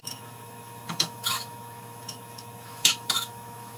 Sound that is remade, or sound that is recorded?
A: remade